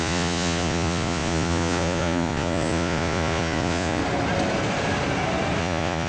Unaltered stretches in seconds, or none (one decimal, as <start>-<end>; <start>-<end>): 4.0-5.6